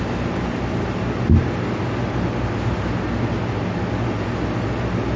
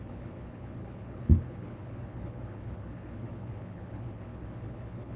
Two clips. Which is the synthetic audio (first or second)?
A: second